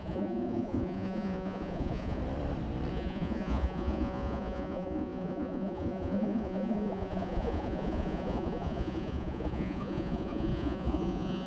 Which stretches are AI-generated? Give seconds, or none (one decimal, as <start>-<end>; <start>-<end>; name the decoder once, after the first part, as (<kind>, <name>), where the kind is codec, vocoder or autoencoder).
0.0-2.2 (vocoder, Vocos); 2.9-11.5